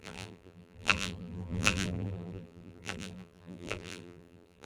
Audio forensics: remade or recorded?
remade